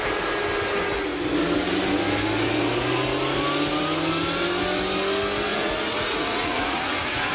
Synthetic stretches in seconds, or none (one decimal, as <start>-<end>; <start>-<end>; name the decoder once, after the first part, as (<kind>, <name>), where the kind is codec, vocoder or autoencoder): 5.5-7.3 (vocoder, Vocos)